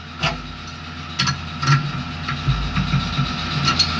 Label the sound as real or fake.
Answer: real